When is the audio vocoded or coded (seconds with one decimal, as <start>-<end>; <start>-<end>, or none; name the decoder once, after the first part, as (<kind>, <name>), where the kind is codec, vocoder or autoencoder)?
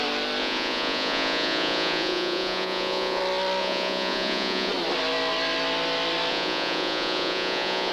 0.4-3.2 (vocoder, Vocos); 3.6-4.7; 6.3-7.9